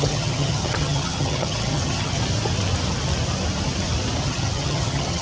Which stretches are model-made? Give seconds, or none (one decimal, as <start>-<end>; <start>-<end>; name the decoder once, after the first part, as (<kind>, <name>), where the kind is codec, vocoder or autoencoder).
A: 0.0-2.2 (vocoder, HiFi-GAN); 4.2-5.2